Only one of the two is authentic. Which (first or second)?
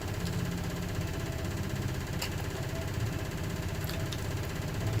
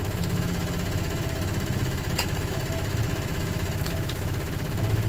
first